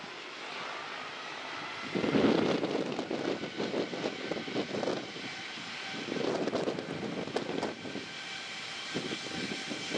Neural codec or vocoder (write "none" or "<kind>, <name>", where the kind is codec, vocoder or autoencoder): none